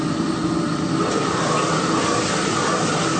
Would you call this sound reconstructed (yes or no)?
no